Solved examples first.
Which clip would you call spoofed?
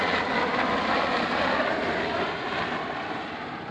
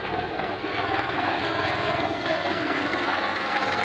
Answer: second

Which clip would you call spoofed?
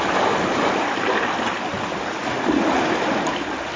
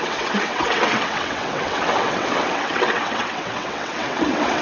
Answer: second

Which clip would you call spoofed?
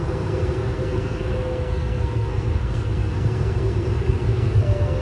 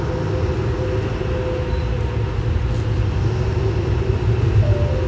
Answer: first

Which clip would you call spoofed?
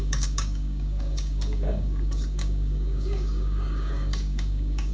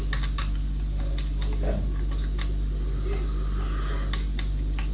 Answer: first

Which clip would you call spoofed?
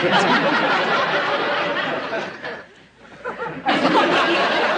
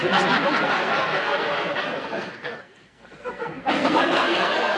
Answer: second